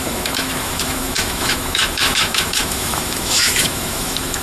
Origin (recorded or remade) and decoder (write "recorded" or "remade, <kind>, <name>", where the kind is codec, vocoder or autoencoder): remade, autoencoder, DAC-VAE